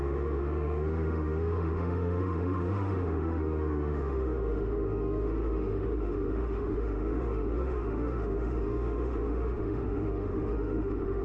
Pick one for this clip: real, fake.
fake